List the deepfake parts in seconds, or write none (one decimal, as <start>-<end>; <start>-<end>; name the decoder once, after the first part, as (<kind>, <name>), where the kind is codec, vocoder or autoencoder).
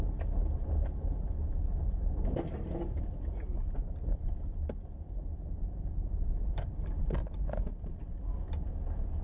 5.3-7.0 (vocoder, BigVGAN v2)